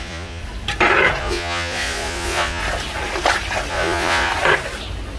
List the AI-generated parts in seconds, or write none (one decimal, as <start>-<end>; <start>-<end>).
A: 0.0-0.4; 1.2-2.6; 3.7-4.3